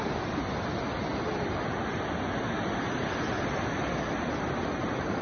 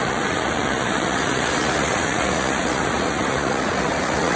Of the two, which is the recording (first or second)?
first